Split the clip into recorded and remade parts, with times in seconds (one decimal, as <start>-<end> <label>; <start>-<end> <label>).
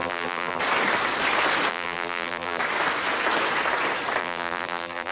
0.0-0.6 remade; 0.6-1.7 recorded; 1.7-2.6 remade; 2.6-4.2 recorded; 4.2-5.1 remade